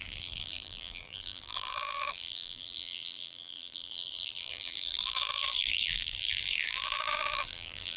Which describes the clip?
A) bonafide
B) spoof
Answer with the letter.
B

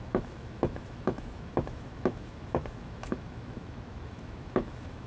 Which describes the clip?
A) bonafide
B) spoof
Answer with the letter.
B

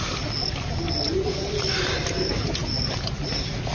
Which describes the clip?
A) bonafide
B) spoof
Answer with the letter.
A